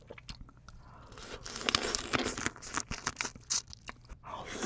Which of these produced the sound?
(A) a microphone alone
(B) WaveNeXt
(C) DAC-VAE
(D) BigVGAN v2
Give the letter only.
A